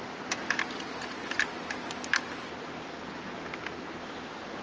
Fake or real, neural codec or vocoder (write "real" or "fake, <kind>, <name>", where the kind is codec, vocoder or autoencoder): real